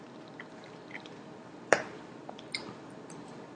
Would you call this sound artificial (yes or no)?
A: yes